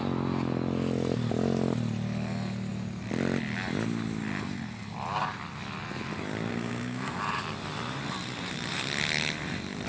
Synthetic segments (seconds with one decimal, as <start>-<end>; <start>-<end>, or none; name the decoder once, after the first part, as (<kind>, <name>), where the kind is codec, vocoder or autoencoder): 6.5-7.2 (codec, SNAC)